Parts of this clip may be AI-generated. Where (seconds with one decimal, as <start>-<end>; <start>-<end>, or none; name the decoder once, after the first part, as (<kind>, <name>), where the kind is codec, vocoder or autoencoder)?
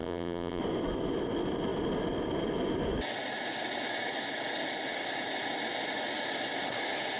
0.0-0.6 (vocoder, BigVGAN v2)